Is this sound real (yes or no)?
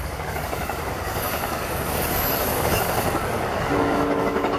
no